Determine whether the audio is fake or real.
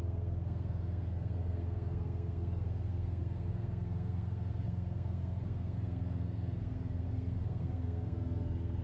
fake